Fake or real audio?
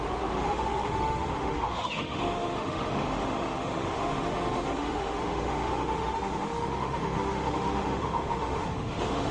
fake